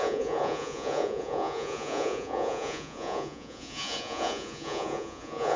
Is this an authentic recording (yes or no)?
no